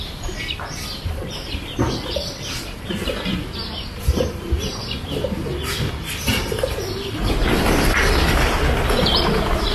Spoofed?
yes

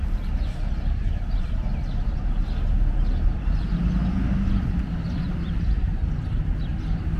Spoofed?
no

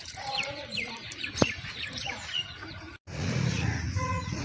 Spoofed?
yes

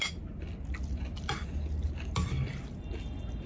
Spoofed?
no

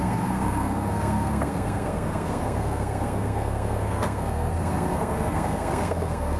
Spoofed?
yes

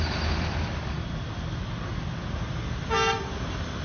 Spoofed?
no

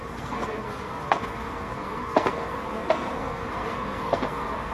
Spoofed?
yes